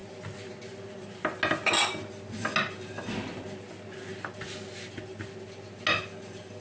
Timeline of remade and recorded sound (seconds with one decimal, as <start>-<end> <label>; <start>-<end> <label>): 0.0-6.6 recorded

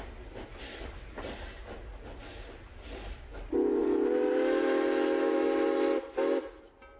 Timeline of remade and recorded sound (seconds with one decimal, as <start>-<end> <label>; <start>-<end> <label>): 0.0-7.0 recorded

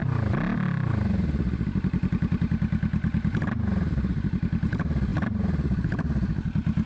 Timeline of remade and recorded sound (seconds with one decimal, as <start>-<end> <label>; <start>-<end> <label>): 0.0-6.9 recorded

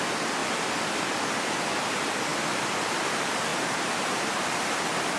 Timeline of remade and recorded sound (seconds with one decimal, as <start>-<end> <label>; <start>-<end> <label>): 0.0-3.5 recorded; 3.5-4.7 remade; 4.7-5.2 recorded